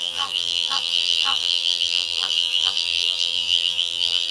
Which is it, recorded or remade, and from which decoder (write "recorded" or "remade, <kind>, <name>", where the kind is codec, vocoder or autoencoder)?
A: remade, vocoder, BigVGAN v2